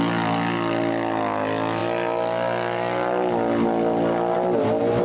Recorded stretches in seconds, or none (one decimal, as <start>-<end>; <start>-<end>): 0.0-5.0